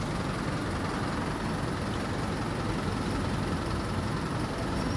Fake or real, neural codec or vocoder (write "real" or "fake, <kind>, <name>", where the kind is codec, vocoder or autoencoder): real